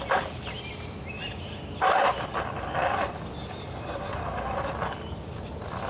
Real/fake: real